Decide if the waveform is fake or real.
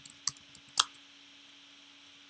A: real